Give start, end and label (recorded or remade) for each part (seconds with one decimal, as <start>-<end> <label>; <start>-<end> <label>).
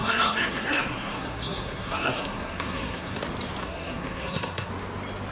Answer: 0.0-3.2 remade; 3.2-3.6 recorded; 3.6-4.7 remade; 4.7-5.3 recorded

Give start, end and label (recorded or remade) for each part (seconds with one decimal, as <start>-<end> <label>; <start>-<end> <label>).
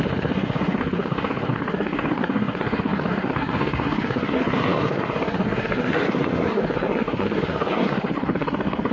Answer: 0.0-8.9 remade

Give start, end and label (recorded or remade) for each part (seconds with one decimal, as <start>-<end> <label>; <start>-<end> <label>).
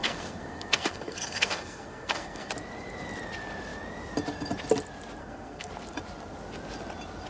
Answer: 0.0-2.5 remade; 2.5-5.2 recorded; 5.2-5.7 remade; 5.7-7.3 recorded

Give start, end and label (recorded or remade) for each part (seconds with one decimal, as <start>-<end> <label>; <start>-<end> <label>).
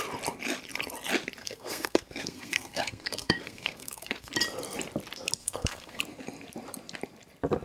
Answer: 0.0-1.4 recorded; 1.4-4.3 remade; 4.3-5.4 recorded; 5.4-6.0 remade; 6.0-7.6 recorded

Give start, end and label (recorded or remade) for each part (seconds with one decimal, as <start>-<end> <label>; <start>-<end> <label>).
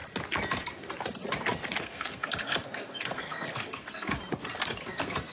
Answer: 0.0-1.8 recorded; 1.8-4.1 remade; 4.1-4.8 recorded; 4.8-5.3 remade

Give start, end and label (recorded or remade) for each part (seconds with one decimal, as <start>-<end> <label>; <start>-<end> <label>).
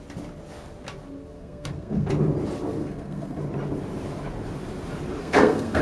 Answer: 0.0-1.3 recorded; 1.3-2.1 remade; 2.1-2.8 recorded; 2.8-3.4 remade; 3.4-5.2 recorded; 5.2-5.8 remade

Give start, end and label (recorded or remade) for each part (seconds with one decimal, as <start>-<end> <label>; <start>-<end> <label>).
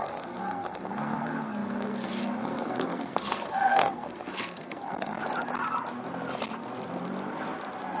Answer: 0.0-5.2 remade; 5.2-8.0 recorded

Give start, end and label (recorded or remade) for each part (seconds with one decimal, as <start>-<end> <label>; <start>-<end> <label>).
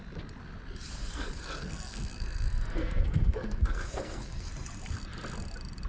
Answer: 0.0-1.0 recorded; 1.0-4.5 remade; 4.5-5.9 recorded